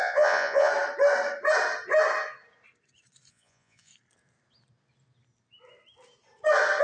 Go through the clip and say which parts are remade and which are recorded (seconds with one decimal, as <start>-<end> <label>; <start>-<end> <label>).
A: 0.0-0.7 remade; 0.7-3.3 recorded; 3.3-3.9 remade; 3.9-6.8 recorded